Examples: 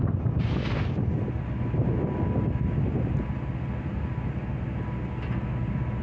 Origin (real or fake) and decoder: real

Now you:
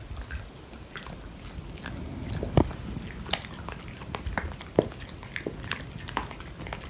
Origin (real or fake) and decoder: real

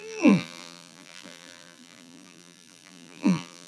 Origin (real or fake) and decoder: fake, vocoder, BigVGAN v2